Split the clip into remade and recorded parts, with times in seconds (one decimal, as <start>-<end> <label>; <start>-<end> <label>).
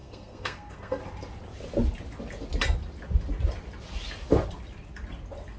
0.0-1.0 remade; 1.0-5.6 recorded